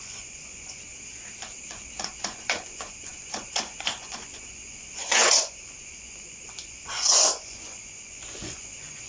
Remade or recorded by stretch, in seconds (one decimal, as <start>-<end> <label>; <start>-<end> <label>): 0.0-0.9 remade; 0.9-1.6 recorded; 1.6-9.1 remade

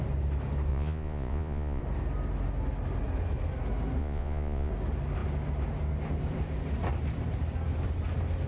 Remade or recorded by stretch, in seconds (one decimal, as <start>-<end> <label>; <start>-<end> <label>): 0.0-0.7 recorded; 0.7-1.8 remade; 1.8-4.0 recorded; 4.0-4.7 remade; 4.7-8.5 recorded

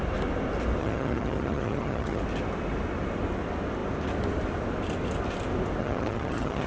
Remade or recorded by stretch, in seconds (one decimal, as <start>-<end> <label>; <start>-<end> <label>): 0.0-0.8 recorded; 0.8-2.2 remade; 2.2-5.8 recorded; 5.8-6.7 remade

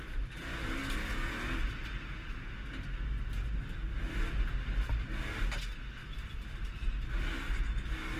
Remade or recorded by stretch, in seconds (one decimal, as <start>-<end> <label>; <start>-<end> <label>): 0.0-6.0 recorded; 6.0-6.7 remade; 6.7-8.2 recorded

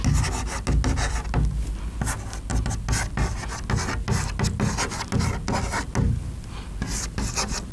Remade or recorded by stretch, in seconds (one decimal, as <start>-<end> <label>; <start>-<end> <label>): 0.0-7.7 recorded

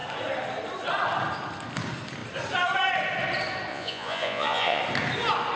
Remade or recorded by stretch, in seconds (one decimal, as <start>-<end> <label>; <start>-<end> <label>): 0.0-3.7 recorded; 3.7-4.8 remade; 4.8-5.6 recorded

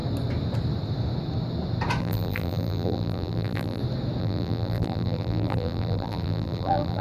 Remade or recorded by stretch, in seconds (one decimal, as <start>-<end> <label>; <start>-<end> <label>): 0.0-2.0 recorded; 2.0-3.8 remade; 3.8-4.2 recorded; 4.2-7.0 remade

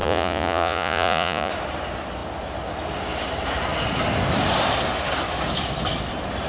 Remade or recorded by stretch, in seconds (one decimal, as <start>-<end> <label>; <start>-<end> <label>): 0.0-1.5 remade; 1.5-6.5 recorded